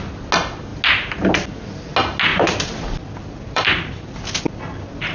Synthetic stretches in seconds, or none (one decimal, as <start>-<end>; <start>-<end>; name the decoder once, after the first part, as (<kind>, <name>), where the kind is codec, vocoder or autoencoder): 2.3-4.6 (vocoder, BigVGAN v2)